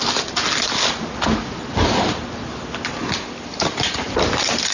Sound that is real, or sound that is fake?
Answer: real